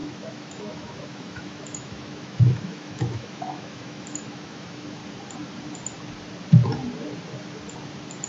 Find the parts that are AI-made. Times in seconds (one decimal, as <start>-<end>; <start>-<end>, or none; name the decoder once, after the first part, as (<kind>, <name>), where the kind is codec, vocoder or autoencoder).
0.0-5.0 (autoencoder, DAC-VAE)